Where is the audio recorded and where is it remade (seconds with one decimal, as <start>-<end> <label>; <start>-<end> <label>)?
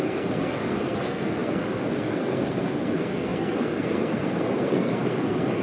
0.0-5.6 remade